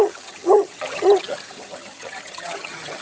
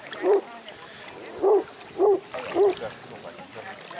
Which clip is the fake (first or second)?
first